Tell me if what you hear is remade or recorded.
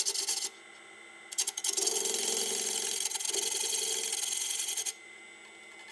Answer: recorded